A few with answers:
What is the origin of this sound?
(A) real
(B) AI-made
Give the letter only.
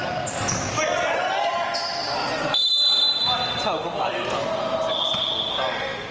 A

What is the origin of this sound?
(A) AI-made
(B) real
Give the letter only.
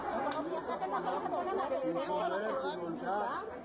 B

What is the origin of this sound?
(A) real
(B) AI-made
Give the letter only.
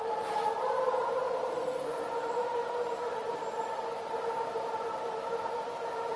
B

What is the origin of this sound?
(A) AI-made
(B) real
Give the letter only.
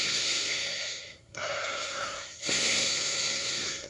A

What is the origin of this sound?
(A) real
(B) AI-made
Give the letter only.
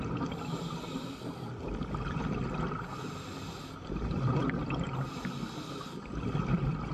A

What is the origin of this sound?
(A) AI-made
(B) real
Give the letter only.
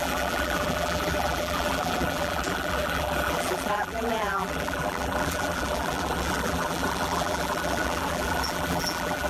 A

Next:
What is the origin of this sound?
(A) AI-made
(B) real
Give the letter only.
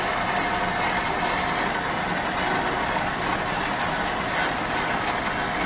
B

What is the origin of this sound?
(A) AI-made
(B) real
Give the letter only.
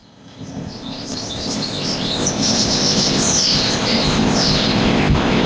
A